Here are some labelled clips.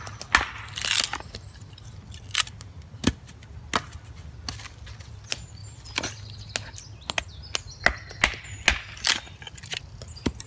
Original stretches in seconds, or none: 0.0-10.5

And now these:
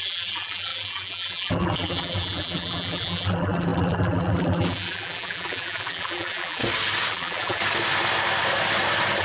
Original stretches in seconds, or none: 6.6-7.1; 7.6-9.2

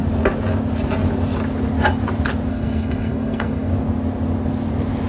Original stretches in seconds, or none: 0.0-2.5; 3.7-5.1

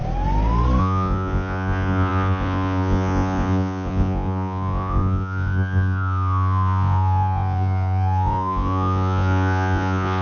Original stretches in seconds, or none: 0.0-0.8

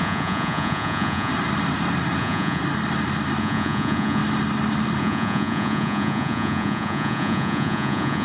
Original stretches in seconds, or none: 1.3-2.2; 2.6-3.4; 4.2-5.0